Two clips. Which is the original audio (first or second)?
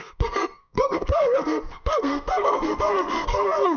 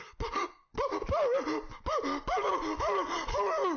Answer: second